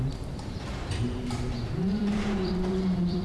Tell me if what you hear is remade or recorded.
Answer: remade